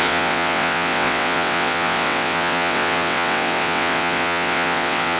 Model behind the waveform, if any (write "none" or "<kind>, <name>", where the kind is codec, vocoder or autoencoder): vocoder, WaveNeXt